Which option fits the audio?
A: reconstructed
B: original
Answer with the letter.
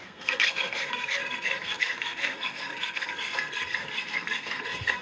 A